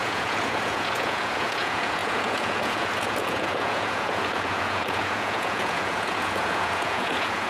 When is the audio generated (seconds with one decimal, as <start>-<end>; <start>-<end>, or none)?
0.0-7.5